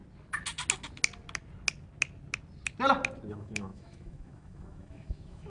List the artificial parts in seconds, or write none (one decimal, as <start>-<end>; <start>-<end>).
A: 3.3-5.5